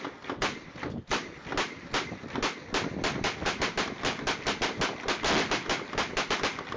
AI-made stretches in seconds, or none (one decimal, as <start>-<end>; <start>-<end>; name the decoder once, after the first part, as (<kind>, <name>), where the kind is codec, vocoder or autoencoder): 0.4-1.3 (vocoder, BigVGAN v2)

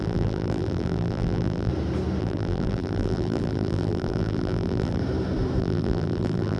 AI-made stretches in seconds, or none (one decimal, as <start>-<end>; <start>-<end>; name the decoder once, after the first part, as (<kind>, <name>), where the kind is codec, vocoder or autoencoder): 0.0-1.7 (vocoder, BigVGAN v2); 2.2-5.0; 5.6-6.6